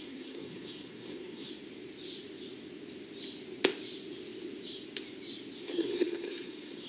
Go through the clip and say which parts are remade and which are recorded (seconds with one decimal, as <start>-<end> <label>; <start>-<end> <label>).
0.0-1.5 remade; 1.5-5.6 recorded; 5.6-6.9 remade